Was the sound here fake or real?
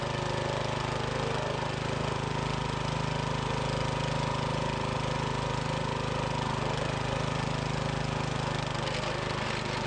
real